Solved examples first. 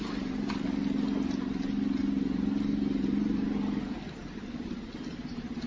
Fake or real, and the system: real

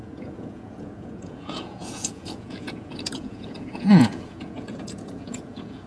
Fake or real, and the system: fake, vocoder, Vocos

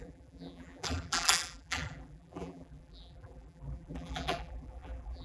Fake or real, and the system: fake, vocoder, BigVGAN v2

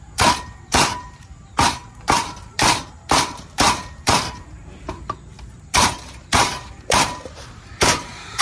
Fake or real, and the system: fake, vocoder, BigVGAN v2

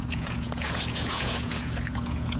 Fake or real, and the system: fake, vocoder, Vocos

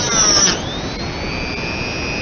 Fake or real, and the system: real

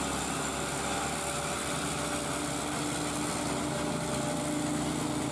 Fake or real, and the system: real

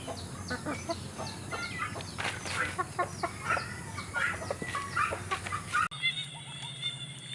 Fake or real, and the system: real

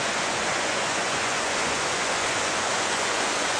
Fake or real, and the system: fake, vocoder, Vocos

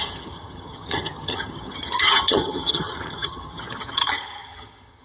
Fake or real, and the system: fake, vocoder, HiFi-GAN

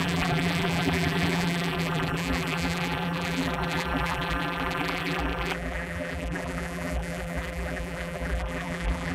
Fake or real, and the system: fake, vocoder, BigVGAN v2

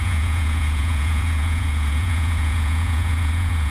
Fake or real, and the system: fake, vocoder, Vocos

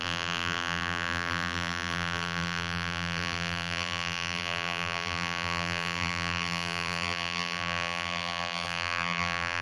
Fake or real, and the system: fake, vocoder, BigVGAN v2